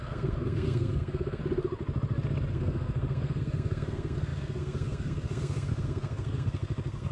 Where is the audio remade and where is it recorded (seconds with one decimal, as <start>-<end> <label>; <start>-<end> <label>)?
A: 0.0-1.4 remade; 1.4-2.5 recorded; 2.5-7.1 remade